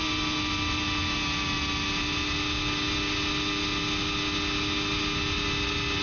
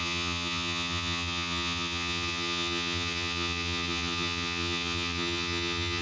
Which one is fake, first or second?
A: second